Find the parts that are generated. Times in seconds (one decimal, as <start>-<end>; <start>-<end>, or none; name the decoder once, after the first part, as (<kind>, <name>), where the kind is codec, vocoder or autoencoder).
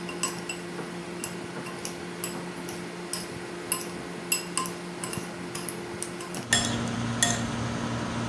none